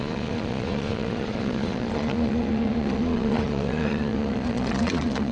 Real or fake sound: fake